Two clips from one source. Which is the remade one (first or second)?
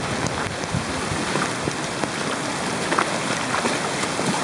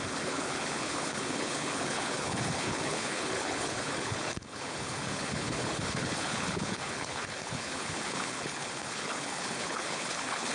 second